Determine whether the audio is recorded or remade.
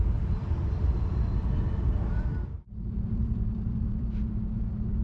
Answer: remade